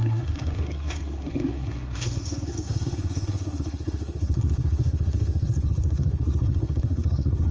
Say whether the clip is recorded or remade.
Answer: remade